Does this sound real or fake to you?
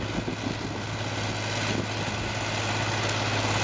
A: real